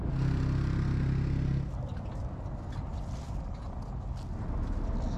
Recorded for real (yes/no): yes